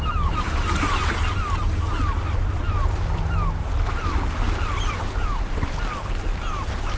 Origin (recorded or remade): recorded